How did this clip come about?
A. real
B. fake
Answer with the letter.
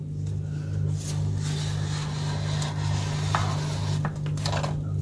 A